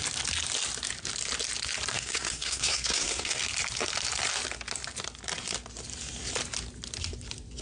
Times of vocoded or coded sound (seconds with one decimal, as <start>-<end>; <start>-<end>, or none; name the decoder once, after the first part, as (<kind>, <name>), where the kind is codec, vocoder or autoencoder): 1.9-3.4 (codec, SNAC)